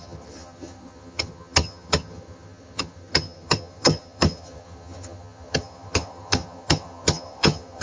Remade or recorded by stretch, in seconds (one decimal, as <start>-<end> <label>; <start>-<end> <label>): 0.0-7.8 remade